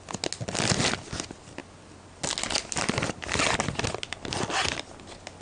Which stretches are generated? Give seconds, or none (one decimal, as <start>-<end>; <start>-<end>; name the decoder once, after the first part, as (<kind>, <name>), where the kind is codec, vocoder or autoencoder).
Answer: none